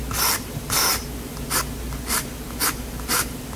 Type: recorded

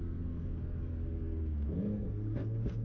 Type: remade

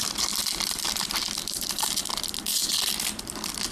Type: recorded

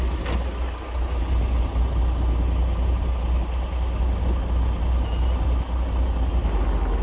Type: recorded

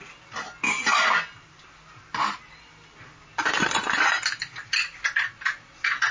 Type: recorded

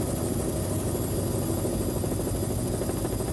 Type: recorded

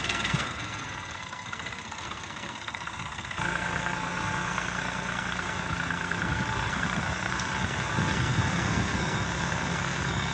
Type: remade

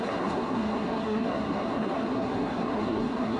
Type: remade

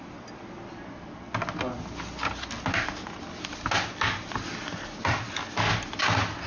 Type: recorded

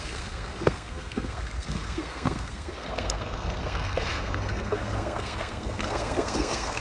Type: remade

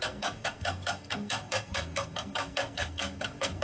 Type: remade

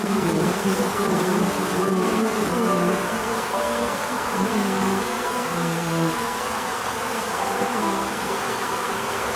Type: remade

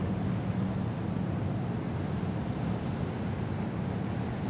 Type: recorded